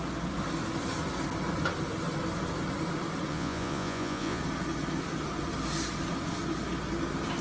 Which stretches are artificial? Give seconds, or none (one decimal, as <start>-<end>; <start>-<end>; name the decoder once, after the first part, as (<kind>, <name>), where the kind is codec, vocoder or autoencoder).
3.3-4.4 (vocoder, Vocos)